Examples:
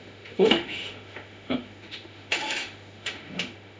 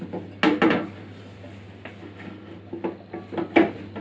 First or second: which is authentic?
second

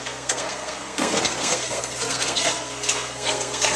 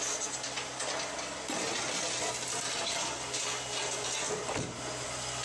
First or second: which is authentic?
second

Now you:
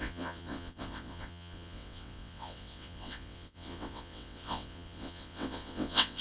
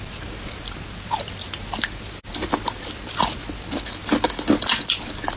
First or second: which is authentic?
second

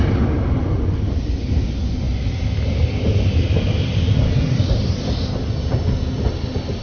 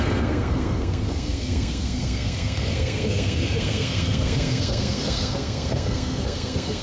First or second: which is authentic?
first